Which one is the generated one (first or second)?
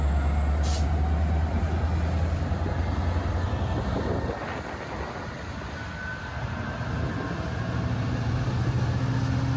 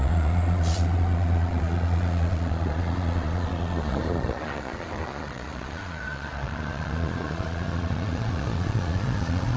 second